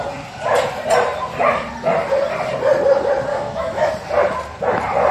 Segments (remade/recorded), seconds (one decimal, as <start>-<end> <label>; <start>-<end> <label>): 0.0-3.3 recorded; 3.3-3.9 remade; 3.9-5.1 recorded